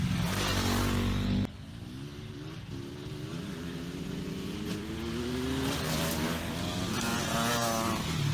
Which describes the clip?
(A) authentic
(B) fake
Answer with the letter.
A